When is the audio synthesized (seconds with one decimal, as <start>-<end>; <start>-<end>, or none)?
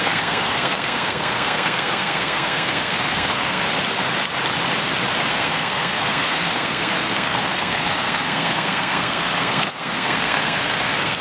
0.0-3.6; 5.3-11.2